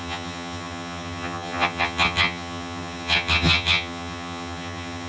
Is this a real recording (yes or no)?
no